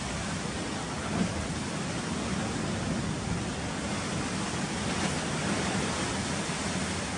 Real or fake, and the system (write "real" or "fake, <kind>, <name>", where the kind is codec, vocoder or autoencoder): real